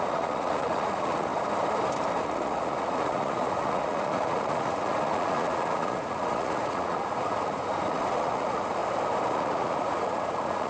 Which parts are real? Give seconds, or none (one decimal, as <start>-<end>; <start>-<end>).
1.3-2.2; 8.8-9.3